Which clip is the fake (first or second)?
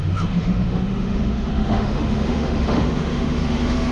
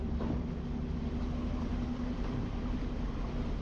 first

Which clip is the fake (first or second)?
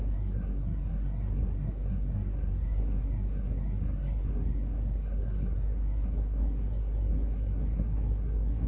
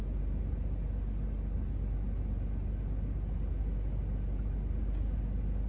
first